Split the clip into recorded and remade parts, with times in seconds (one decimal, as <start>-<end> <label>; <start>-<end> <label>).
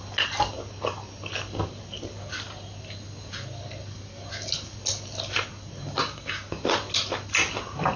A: 0.0-6.0 recorded; 6.0-6.5 remade; 6.5-8.0 recorded